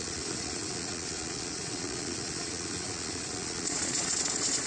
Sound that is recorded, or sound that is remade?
remade